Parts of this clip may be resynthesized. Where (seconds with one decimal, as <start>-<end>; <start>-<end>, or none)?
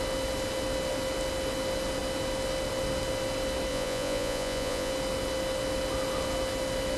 3.7-4.9